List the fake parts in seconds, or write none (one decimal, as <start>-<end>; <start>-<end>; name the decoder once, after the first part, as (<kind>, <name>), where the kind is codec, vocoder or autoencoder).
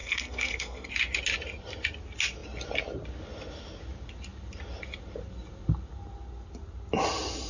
0.0-0.9 (codec, SNAC)